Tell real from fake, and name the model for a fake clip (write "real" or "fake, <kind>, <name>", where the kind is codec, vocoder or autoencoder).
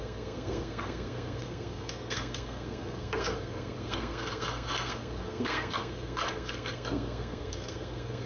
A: fake, codec, SNAC